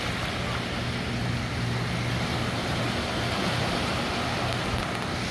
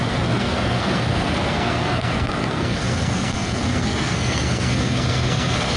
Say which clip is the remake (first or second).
second